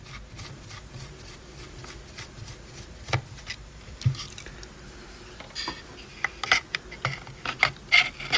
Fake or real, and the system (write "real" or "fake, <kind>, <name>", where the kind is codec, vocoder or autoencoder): real